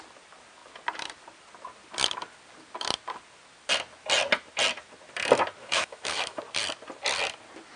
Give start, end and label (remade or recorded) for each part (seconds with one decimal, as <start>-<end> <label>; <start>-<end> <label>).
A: 0.0-5.6 recorded; 5.6-6.4 remade; 6.4-7.8 recorded